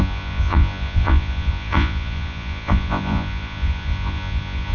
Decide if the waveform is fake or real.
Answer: fake